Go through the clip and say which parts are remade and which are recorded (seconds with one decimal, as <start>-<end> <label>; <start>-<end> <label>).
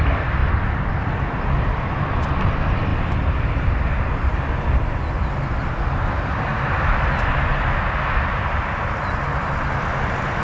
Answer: 0.0-10.4 recorded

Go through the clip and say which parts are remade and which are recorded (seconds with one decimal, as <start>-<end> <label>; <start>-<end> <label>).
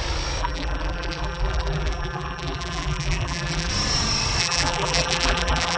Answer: 0.0-0.4 recorded; 0.4-3.7 remade; 3.7-4.4 recorded; 4.4-5.8 remade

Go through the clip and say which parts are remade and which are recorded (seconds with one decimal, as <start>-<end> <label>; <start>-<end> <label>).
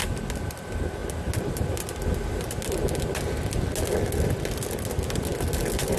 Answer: 0.0-6.0 recorded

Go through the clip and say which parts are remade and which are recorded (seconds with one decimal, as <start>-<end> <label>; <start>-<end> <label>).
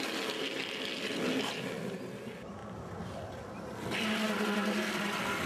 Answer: 0.0-5.5 recorded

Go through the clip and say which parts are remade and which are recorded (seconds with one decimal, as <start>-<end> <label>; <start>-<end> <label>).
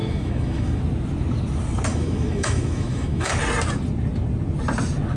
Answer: 0.0-0.8 remade; 0.8-1.9 recorded; 1.9-3.3 remade; 3.3-5.2 recorded